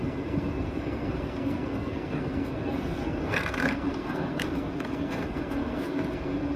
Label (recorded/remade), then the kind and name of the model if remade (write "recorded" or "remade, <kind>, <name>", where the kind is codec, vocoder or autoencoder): remade, codec, SNAC